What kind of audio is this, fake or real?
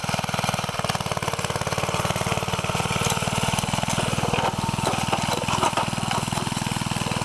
real